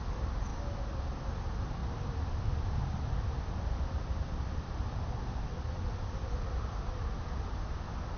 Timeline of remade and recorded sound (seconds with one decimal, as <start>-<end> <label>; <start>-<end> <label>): 0.0-1.8 recorded; 1.8-3.4 remade; 3.4-8.2 recorded